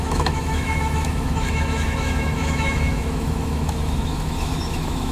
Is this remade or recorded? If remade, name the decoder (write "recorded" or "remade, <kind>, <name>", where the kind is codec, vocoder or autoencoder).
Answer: remade, autoencoder, DAC-VAE